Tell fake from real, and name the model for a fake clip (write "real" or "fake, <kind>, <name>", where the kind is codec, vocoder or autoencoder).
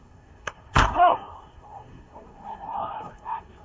fake, codec, SNAC